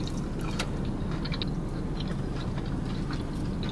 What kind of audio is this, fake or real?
real